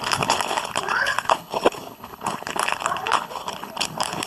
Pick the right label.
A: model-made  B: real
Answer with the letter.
A